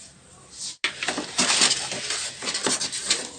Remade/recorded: recorded